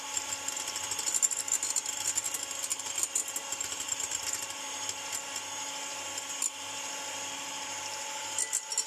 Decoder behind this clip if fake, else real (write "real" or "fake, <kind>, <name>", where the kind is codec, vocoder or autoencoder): real